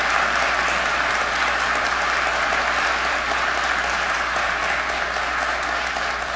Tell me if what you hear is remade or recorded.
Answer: recorded